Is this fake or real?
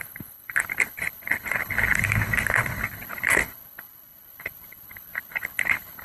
fake